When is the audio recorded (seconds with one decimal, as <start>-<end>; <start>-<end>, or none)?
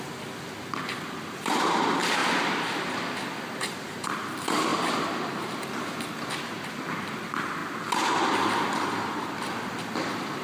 4.7-5.8; 7.6-8.2